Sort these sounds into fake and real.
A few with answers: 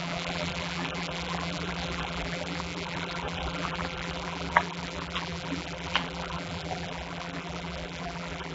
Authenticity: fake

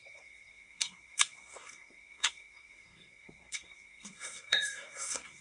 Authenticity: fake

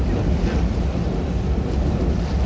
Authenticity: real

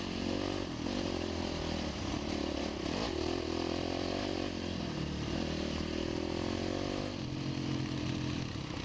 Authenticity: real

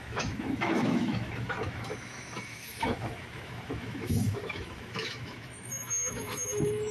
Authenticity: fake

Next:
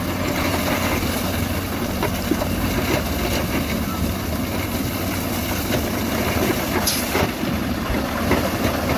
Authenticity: real